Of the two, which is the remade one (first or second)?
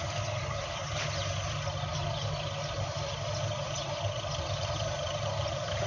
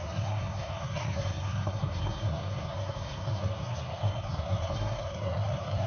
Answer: second